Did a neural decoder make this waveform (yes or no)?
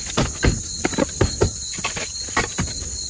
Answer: no